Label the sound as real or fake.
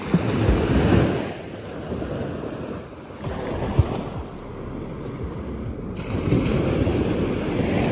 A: real